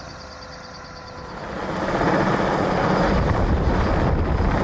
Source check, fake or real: real